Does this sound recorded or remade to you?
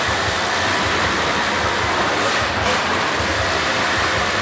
recorded